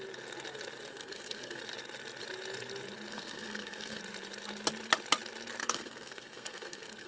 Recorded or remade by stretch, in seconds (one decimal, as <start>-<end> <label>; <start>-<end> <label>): 0.0-0.9 recorded; 0.9-1.6 remade; 1.6-3.1 recorded; 3.1-4.0 remade; 4.0-5.6 recorded; 5.6-7.1 remade